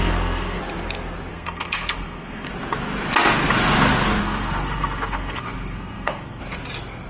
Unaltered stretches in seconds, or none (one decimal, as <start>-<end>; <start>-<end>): 0.6-1.3; 2.5-4.2; 6.4-7.1